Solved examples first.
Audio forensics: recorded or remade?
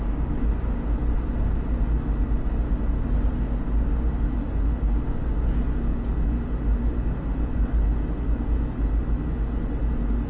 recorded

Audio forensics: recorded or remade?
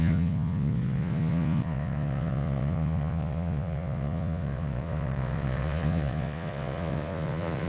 remade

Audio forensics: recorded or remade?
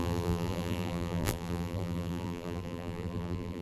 remade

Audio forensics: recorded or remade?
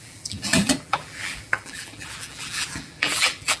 remade